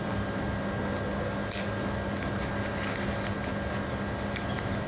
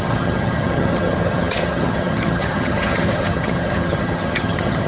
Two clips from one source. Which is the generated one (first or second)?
second